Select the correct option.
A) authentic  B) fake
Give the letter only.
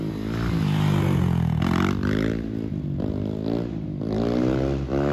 A